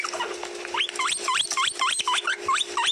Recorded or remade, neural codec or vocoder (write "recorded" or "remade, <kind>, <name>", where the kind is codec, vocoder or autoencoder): recorded